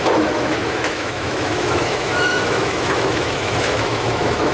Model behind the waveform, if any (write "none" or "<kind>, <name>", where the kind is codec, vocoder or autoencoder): autoencoder, DAC-VAE